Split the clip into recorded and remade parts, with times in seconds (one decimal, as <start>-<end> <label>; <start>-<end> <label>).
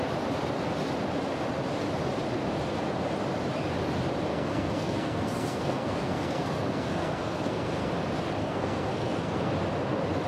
0.0-4.3 recorded; 4.3-7.9 remade; 7.9-8.4 recorded; 8.4-9.5 remade; 9.5-10.3 recorded